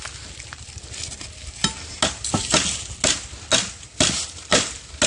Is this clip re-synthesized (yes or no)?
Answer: no